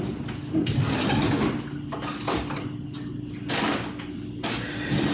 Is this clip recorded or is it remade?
recorded